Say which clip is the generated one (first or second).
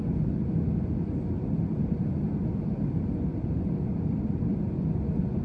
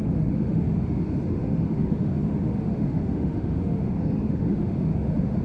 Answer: second